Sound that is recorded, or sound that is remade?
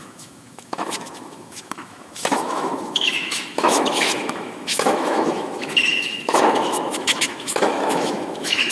remade